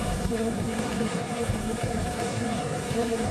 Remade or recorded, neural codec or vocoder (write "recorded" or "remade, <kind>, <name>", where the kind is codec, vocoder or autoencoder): remade, codec, SNAC